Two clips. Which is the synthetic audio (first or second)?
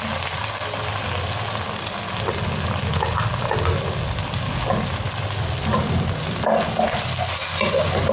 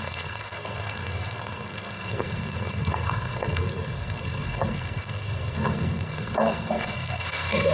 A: second